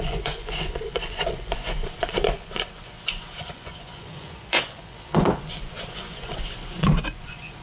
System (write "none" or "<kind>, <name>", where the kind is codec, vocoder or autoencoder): vocoder, Vocos